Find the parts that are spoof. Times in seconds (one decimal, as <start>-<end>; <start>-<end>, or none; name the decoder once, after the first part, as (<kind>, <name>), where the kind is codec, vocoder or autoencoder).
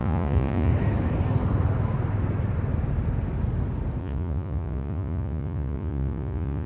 0.0-0.7 (vocoder, Vocos); 4.0-6.7